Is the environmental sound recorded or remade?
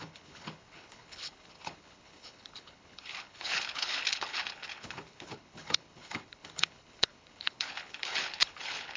remade